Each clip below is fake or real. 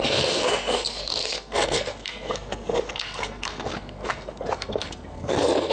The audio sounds fake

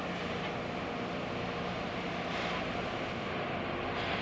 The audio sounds real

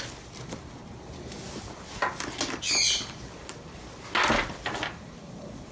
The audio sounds real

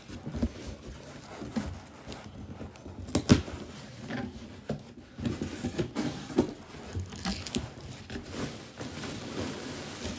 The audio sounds real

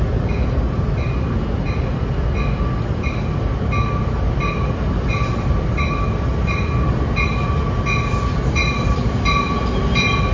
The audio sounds real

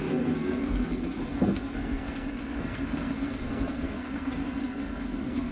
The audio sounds fake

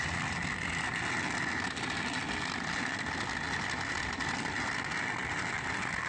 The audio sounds real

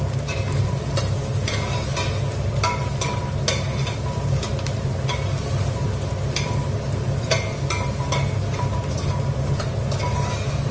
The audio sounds real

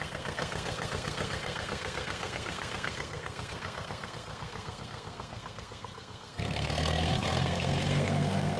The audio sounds fake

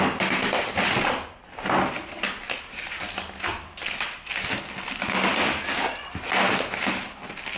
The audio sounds real